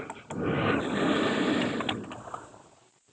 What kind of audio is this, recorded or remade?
recorded